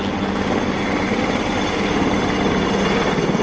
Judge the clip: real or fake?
real